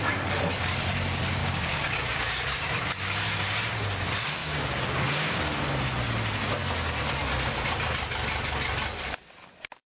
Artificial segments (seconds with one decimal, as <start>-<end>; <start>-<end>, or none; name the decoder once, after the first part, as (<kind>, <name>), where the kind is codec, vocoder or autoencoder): 1.4-2.7 (codec, DAC); 4.4-5.4